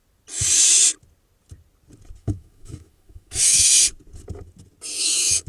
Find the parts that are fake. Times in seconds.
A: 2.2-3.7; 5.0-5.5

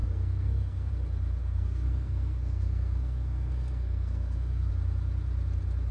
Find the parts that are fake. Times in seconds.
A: 0.0-0.9; 1.4-4.7

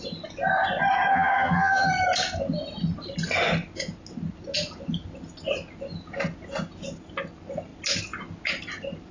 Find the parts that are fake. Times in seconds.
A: 1.1-1.9

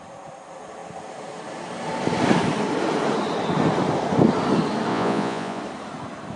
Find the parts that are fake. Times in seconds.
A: 4.9-5.6

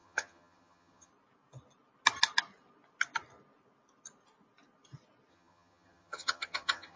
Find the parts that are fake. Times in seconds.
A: 0.0-1.1; 5.3-7.0

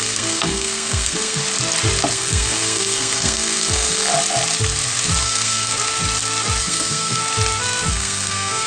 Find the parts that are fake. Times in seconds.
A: 0.0-1.4; 2.1-4.1; 5.2-5.7; 6.6-7.2; 7.9-8.7